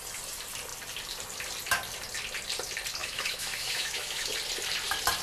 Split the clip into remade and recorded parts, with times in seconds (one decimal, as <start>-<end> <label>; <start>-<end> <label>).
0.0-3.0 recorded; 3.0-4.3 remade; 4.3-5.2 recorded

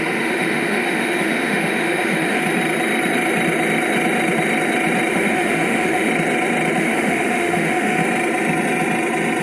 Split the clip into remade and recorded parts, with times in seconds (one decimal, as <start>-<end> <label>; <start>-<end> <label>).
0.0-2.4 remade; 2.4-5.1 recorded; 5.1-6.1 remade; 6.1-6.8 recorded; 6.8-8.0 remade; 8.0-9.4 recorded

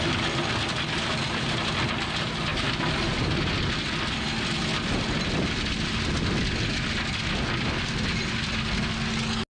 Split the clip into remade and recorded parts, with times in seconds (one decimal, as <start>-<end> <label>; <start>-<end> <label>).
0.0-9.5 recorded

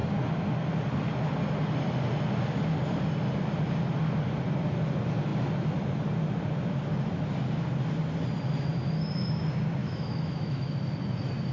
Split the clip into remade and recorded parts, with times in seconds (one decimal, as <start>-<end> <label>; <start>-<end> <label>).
0.0-8.7 recorded; 8.7-9.4 remade; 9.4-9.8 recorded; 9.8-10.8 remade; 10.8-11.5 recorded